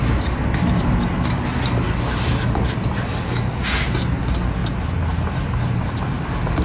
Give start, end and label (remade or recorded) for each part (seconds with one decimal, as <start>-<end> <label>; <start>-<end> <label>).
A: 0.0-6.6 recorded